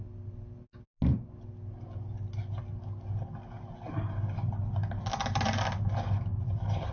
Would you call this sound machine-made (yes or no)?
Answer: no